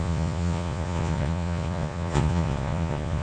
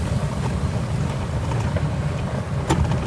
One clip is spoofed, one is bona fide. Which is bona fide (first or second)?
second